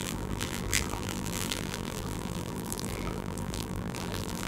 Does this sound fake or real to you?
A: fake